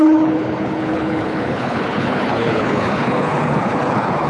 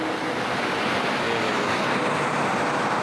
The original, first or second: second